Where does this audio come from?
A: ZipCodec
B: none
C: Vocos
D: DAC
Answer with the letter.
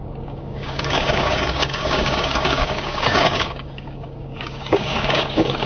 D